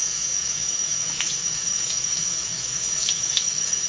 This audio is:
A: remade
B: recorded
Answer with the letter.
A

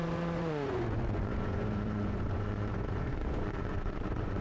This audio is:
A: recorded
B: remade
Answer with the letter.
B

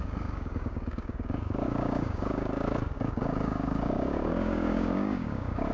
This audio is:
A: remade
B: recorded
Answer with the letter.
A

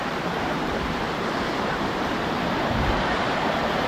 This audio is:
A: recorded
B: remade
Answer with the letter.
B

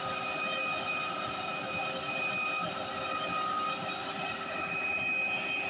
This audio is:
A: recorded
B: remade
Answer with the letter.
A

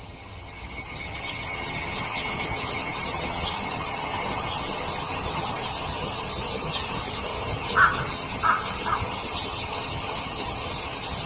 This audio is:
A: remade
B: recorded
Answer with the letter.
A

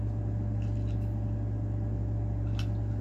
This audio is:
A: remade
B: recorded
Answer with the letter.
B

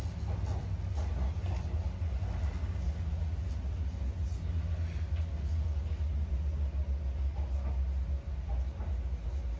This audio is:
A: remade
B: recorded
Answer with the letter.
B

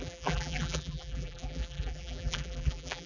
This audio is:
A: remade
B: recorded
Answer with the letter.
A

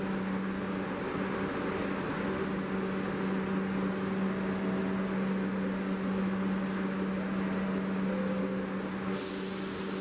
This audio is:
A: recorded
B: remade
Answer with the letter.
A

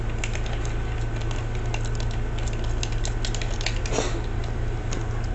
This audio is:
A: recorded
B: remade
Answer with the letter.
A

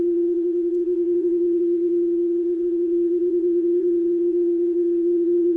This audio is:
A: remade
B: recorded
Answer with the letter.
A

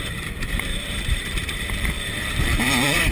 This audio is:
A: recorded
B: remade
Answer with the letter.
B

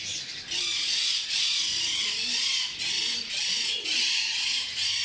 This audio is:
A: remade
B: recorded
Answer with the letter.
B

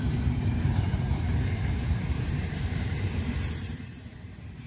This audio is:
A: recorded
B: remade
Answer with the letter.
B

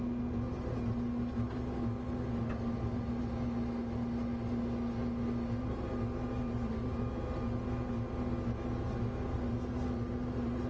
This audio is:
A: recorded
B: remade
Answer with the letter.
A